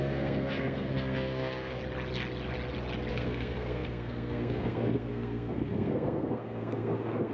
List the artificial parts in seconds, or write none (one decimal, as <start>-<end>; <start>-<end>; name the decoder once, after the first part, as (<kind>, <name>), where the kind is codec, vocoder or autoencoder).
0.0-1.8 (codec, SNAC); 3.1-7.3